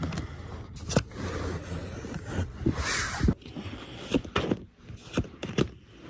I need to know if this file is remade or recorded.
recorded